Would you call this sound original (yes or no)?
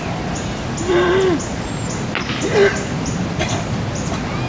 yes